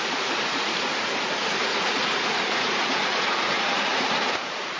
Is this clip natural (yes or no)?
no